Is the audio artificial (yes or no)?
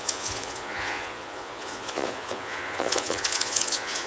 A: yes